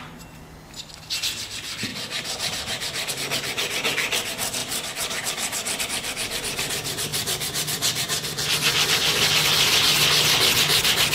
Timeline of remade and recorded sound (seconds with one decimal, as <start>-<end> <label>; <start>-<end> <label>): 0.0-1.9 recorded; 1.9-3.1 remade; 3.1-11.1 recorded